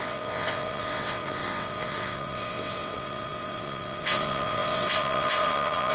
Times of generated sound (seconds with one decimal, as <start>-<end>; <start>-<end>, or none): 0.0-5.9